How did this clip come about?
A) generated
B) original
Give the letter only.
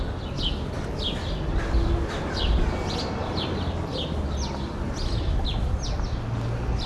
B